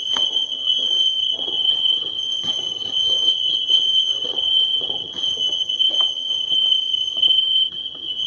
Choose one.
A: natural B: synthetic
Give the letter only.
B